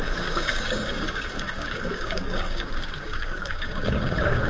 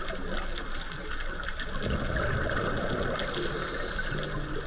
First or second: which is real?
second